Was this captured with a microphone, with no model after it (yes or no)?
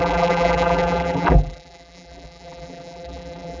no